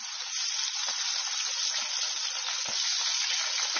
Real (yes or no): yes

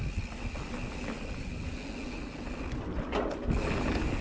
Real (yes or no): yes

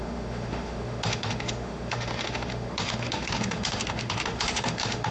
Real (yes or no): no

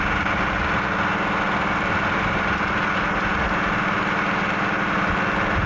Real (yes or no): yes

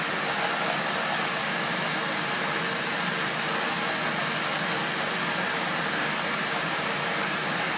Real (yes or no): yes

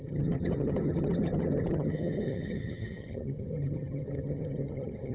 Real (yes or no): no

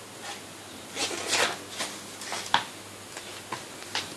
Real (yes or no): yes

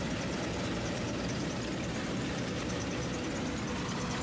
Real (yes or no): no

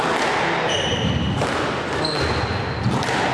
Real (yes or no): yes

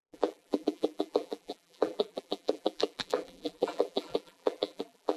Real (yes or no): no